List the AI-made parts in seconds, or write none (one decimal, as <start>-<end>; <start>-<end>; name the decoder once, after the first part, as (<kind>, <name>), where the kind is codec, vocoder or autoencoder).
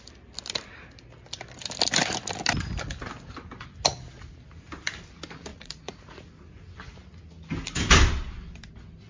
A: 5.5-6.2 (vocoder, Vocos)